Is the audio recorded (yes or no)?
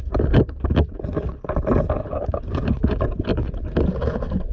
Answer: yes